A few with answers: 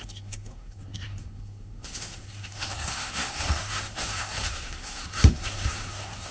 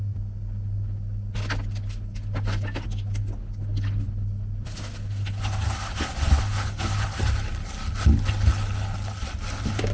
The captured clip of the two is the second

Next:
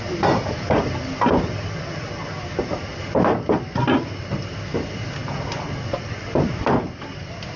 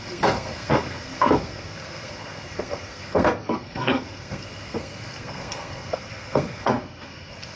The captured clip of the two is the first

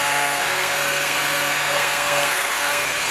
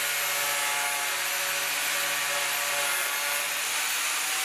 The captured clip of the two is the second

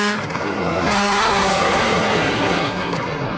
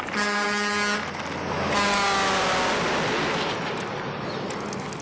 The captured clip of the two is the second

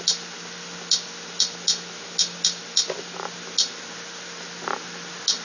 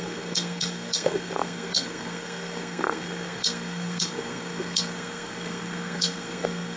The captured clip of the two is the first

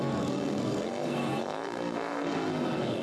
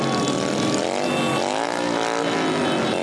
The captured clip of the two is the second